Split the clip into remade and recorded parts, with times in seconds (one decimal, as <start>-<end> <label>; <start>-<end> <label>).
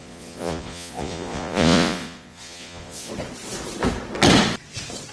0.0-3.1 remade; 3.1-5.1 recorded